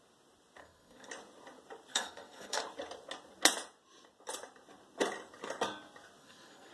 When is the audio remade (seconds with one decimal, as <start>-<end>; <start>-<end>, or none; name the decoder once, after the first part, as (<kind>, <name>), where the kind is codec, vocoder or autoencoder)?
0.6-1.1 (codec, SNAC); 1.9-2.6; 6.2-6.7